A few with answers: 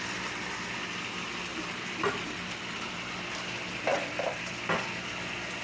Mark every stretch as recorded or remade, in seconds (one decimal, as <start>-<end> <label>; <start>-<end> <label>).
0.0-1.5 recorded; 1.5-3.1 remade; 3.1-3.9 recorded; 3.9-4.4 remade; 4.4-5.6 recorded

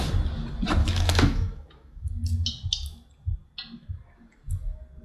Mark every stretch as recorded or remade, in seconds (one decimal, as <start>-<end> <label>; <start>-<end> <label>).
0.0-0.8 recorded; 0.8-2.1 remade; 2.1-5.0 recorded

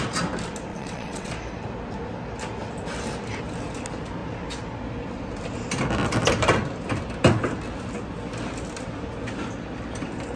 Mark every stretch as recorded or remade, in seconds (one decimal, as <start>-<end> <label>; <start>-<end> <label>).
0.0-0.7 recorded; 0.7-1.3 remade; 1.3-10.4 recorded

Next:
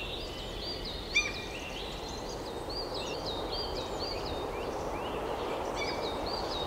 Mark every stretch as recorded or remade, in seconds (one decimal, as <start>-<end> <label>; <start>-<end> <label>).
0.0-6.7 recorded

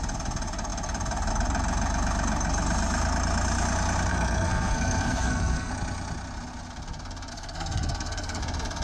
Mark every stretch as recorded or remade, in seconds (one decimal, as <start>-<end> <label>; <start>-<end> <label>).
0.0-4.1 recorded; 4.1-5.7 remade; 5.7-7.3 recorded; 7.3-8.4 remade; 8.4-8.8 recorded

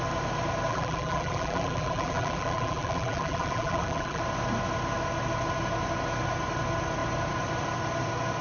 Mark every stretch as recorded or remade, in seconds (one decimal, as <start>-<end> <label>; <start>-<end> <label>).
0.0-0.7 recorded; 0.7-4.2 remade; 4.2-8.4 recorded